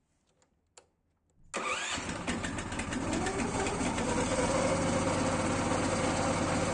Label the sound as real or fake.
real